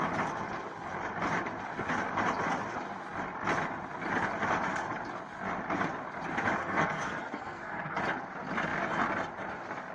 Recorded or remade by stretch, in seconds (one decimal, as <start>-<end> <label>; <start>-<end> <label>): 0.0-6.6 recorded; 6.6-8.0 remade; 8.0-9.9 recorded